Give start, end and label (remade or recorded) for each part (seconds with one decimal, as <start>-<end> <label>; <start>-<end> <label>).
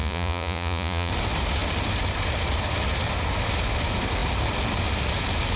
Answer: 0.0-1.1 remade; 1.1-5.6 recorded